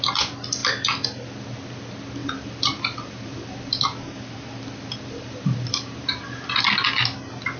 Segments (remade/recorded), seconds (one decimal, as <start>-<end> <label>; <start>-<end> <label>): 0.0-2.2 recorded; 2.2-6.6 remade; 6.6-7.6 recorded